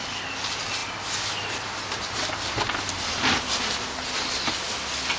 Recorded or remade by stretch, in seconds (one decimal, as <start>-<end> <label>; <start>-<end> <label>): 0.0-5.2 recorded